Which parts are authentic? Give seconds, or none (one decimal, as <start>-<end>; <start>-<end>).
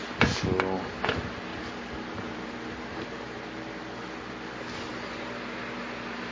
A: 0.0-1.5; 3.5-6.3